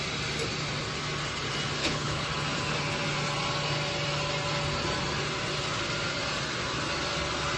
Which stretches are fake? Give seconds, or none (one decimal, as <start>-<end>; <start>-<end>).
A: 1.8-2.3